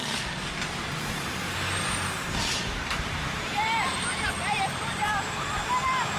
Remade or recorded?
remade